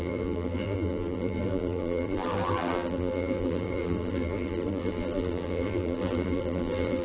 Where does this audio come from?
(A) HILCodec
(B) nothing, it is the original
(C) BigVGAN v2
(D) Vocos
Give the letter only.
C